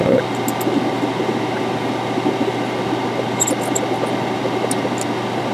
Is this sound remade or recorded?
recorded